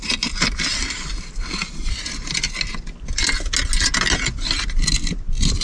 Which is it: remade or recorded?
recorded